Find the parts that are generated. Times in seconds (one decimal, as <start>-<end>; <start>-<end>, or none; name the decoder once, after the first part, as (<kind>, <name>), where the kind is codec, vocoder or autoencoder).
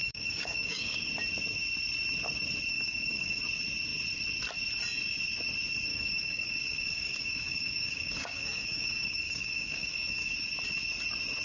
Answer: 0.0-1.1 (codec, DAC); 2.7-3.4; 5.9-10.3